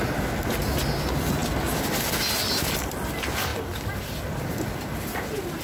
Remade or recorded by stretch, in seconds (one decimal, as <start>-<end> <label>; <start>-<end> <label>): 0.0-5.6 recorded